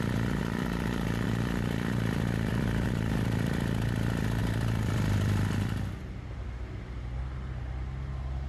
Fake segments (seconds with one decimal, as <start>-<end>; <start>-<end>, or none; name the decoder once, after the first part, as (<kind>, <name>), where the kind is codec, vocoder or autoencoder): 0.0-8.5 (vocoder, BigVGAN v2)